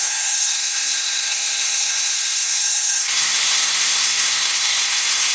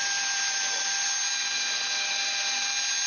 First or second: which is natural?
second